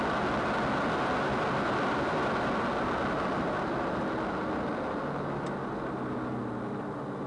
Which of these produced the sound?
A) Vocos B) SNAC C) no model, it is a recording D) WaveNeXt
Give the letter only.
C